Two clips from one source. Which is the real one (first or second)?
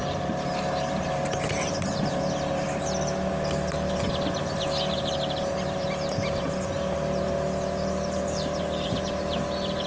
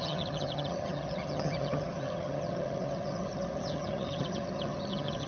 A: first